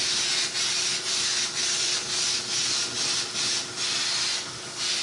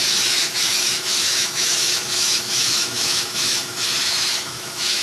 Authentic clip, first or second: first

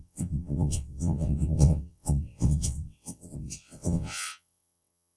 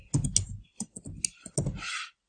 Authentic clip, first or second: second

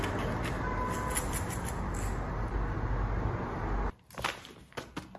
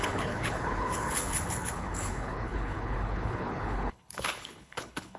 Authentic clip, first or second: first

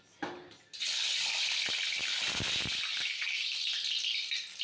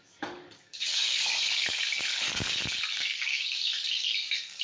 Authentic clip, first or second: first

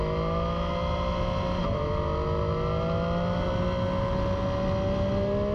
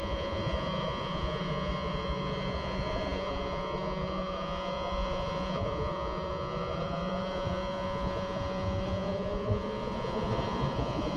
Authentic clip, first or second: first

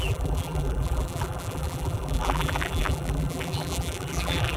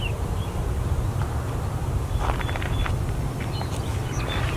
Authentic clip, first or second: second